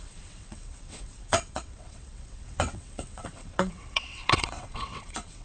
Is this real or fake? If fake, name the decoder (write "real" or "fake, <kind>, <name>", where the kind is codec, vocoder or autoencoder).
fake, vocoder, WaveNeXt